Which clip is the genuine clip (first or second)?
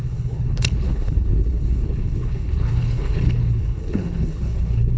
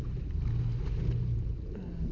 second